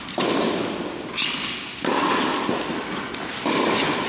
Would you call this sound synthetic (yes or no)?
no